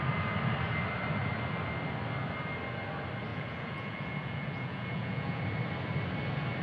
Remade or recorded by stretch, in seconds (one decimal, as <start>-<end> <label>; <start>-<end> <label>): 0.0-3.3 recorded; 3.3-5.4 remade; 5.4-6.6 recorded